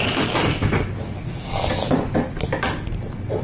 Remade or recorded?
recorded